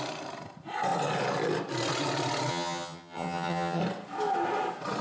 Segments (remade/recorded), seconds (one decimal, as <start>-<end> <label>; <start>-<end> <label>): 0.0-2.5 recorded; 2.5-3.8 remade; 3.8-5.0 recorded